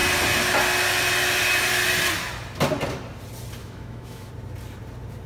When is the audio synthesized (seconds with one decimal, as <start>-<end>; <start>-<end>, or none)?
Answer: 3.6-4.3